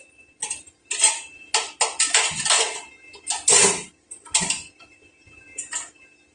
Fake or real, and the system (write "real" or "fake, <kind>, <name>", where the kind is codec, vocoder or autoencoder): real